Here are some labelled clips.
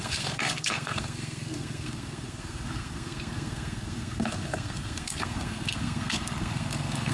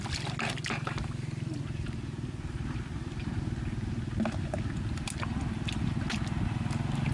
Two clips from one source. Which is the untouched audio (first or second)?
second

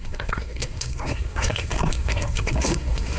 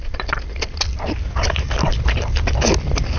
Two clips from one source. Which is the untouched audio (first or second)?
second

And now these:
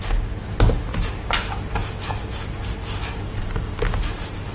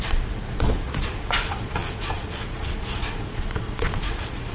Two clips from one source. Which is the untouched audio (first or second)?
first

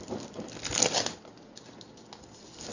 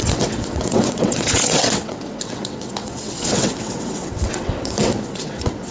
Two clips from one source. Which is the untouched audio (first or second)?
first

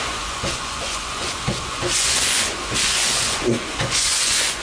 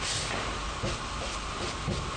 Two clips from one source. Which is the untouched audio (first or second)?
second